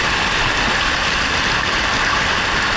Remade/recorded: recorded